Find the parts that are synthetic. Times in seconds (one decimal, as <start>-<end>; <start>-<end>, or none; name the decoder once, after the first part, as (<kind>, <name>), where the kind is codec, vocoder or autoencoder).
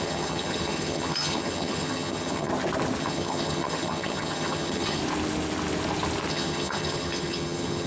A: 0.0-2.5 (vocoder, HiFi-GAN); 3.0-5.0; 6.3-7.9